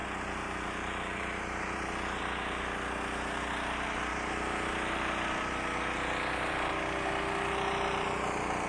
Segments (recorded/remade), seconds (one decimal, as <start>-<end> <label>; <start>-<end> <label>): 0.0-2.2 remade; 2.2-4.1 recorded; 4.1-5.5 remade; 5.5-8.7 recorded